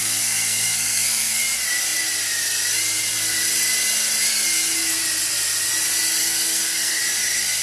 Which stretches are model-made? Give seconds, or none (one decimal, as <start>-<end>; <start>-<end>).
0.0-1.4; 6.2-7.0